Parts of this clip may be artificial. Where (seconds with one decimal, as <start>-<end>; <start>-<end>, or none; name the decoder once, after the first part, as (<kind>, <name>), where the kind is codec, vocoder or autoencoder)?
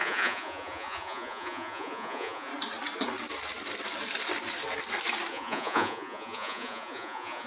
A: 0.0-2.5 (vocoder, Vocos); 5.3-7.5